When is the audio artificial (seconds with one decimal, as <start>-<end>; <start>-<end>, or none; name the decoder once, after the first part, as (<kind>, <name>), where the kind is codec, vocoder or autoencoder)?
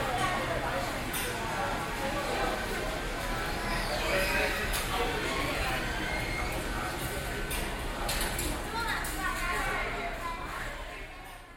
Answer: 3.7-5.0 (codec, DAC)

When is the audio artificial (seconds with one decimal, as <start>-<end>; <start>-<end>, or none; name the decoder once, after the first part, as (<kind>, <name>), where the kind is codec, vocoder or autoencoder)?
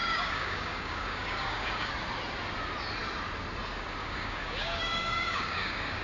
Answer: 0.0-1.9 (codec, DAC); 4.0-6.0